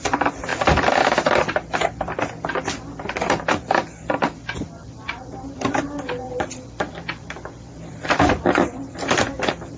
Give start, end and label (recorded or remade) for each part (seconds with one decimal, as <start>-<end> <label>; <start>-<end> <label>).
0.0-0.5 remade; 0.5-1.1 recorded; 1.1-9.8 remade